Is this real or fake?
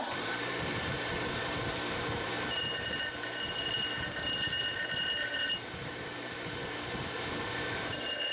fake